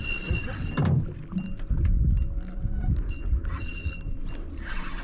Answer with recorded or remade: recorded